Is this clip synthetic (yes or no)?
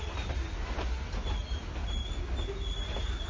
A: no